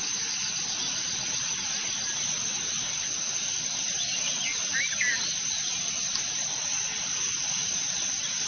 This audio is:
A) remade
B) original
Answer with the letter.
B